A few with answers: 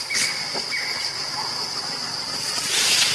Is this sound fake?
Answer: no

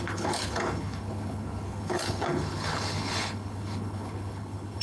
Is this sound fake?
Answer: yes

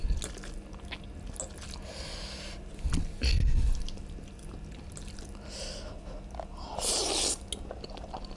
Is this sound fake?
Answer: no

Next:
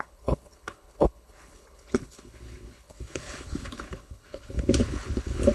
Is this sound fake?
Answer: yes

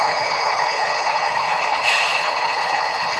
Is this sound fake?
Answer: yes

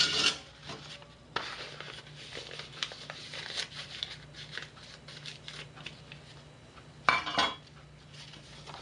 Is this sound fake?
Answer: no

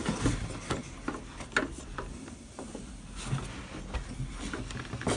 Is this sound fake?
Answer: no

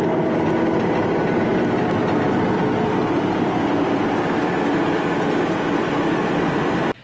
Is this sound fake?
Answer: no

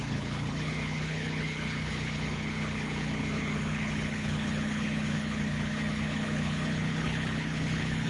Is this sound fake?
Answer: yes